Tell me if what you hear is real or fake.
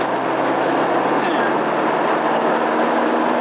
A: real